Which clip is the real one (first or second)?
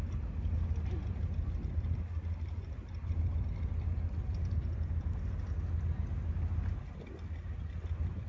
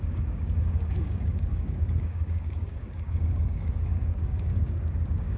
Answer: first